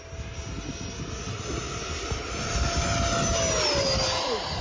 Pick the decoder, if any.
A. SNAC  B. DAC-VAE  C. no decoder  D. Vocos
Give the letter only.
C